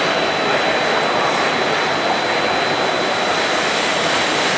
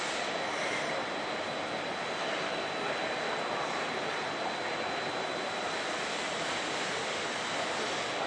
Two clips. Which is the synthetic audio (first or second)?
second